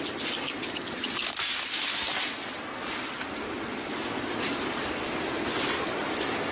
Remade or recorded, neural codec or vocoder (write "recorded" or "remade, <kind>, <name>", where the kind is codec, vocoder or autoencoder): recorded